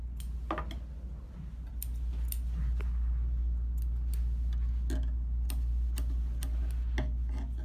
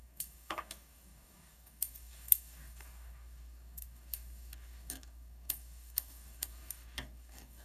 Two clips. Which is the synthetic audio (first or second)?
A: second